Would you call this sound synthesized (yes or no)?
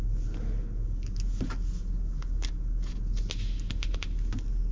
no